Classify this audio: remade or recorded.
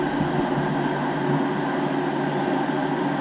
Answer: recorded